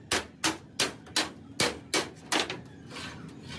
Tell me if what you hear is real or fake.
real